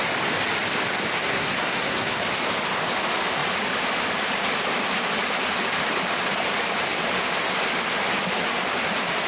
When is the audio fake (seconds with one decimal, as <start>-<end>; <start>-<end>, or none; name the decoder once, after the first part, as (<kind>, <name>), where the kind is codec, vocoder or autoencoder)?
1.2-2.2 (codec, SNAC)